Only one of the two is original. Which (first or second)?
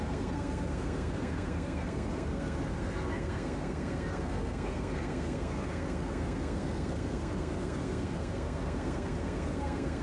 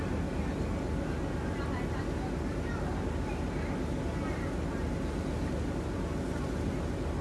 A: second